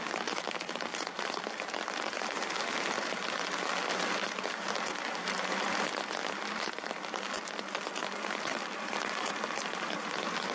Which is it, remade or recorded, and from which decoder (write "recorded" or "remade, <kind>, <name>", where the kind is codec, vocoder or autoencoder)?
recorded